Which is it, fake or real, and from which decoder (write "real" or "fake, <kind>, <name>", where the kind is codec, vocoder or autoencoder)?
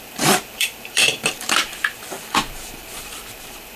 fake, vocoder, BigVGAN v2